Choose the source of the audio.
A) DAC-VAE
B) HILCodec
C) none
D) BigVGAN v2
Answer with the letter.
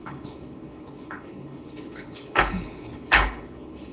B